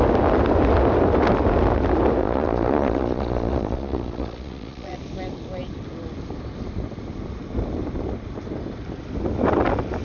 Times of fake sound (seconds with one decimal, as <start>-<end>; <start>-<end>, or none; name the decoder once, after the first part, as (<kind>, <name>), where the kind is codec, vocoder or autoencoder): 2.2-5.0 (vocoder, Vocos)